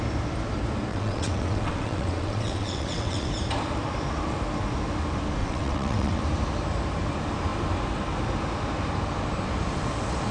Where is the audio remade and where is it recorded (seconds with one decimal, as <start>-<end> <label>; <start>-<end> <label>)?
0.0-0.9 recorded; 0.9-3.3 remade; 3.3-5.4 recorded; 5.4-6.2 remade; 6.2-10.3 recorded